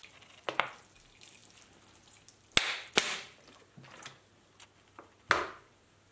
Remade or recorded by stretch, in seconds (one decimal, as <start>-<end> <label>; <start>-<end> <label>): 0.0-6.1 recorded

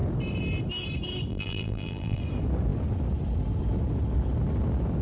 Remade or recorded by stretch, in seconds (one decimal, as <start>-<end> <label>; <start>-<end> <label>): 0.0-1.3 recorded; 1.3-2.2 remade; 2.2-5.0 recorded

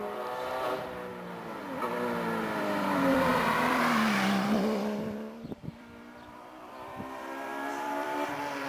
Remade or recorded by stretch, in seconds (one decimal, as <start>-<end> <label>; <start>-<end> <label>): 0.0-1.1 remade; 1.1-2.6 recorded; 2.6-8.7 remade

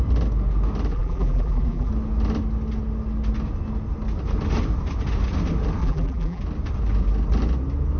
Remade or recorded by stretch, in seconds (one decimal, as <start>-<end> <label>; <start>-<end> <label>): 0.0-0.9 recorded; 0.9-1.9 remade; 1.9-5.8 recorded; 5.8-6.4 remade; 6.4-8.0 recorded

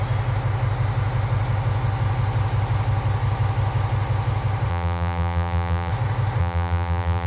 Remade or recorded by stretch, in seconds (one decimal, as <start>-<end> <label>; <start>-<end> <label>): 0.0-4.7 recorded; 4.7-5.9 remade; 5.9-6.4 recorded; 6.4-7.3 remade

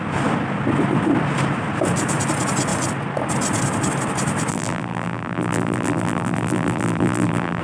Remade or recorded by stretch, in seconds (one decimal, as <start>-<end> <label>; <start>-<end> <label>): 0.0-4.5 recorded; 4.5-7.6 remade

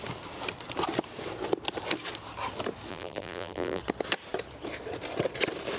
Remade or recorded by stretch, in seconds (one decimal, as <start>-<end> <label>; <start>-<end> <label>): 0.0-2.9 recorded; 2.9-3.8 remade; 3.8-5.8 recorded